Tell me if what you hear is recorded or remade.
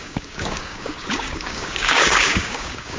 remade